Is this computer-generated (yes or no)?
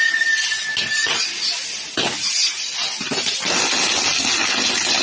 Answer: no